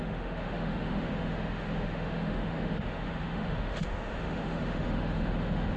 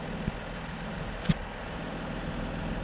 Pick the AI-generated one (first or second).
first